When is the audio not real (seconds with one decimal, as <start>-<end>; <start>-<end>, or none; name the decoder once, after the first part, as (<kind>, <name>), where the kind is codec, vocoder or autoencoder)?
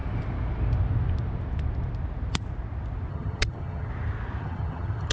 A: 3.1-3.9 (vocoder, HiFi-GAN); 4.4-5.1